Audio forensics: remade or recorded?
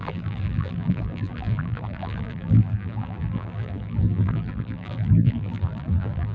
remade